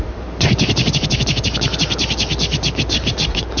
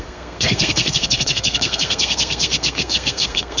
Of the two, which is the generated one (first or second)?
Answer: second